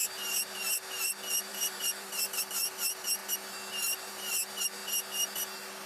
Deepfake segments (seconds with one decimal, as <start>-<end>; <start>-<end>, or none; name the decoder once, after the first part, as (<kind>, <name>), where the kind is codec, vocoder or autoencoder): 1.5-2.4 (vocoder, BigVGAN v2)